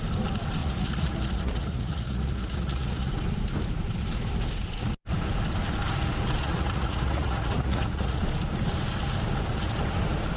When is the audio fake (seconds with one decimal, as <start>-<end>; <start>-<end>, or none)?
0.6-3.1; 6.4-8.2

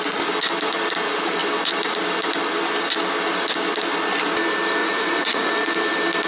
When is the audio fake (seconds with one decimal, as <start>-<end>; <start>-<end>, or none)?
4.8-5.5

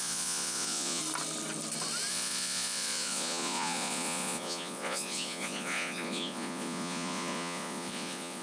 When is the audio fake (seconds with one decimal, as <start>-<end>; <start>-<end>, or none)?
0.0-1.0; 2.1-8.4